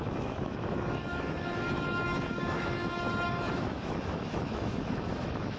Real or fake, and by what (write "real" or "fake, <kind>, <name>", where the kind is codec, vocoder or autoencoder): fake, autoencoder, DAC-VAE